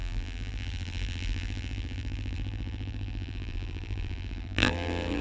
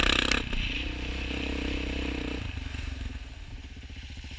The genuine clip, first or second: second